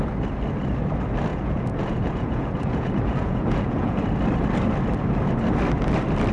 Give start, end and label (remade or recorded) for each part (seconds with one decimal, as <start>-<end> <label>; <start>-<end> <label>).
0.0-1.3 recorded; 1.3-4.0 remade; 4.0-6.3 recorded